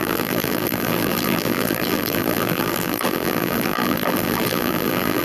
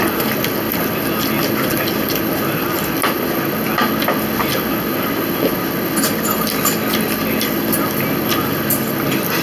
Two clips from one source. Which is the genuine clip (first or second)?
second